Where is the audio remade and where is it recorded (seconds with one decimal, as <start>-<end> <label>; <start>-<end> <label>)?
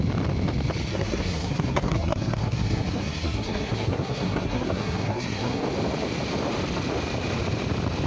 0.0-0.9 recorded; 0.9-5.6 remade; 5.6-8.1 recorded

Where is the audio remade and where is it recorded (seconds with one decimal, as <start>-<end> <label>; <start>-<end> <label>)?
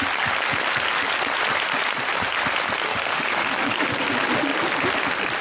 0.0-2.9 recorded; 2.9-4.0 remade; 4.0-5.4 recorded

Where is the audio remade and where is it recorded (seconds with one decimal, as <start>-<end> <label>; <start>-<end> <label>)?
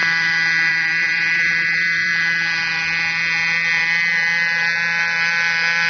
0.0-0.7 recorded; 0.7-2.1 remade; 2.1-5.9 recorded